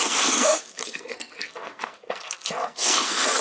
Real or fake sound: fake